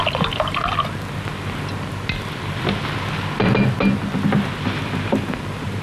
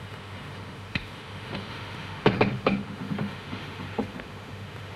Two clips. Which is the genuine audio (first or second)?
first